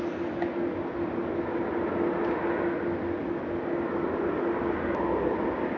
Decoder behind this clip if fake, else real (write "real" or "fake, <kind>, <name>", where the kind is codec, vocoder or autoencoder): real